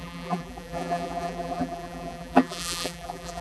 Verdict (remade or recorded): remade